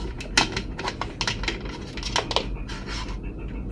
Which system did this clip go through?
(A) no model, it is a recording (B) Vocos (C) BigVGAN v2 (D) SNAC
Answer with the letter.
A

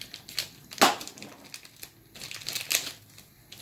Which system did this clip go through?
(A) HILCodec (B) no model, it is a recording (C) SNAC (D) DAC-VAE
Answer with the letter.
B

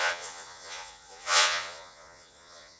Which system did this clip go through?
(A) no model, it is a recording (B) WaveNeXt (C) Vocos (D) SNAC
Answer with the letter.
C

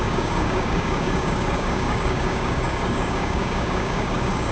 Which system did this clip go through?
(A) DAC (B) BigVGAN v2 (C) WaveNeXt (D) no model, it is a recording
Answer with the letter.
A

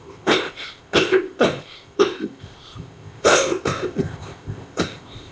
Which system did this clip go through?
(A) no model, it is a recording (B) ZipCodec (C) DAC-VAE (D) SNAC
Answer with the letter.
B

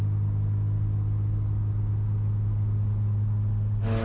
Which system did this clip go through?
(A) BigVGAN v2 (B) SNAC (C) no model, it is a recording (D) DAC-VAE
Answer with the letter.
C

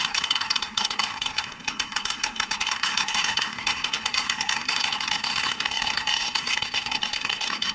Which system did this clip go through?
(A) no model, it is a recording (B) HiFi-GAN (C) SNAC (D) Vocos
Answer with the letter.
C